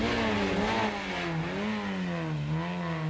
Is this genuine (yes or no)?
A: yes